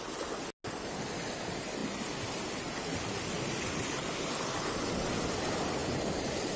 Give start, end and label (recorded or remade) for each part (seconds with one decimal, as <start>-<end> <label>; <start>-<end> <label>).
0.0-6.6 recorded